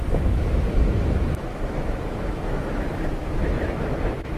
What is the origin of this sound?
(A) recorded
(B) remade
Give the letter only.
B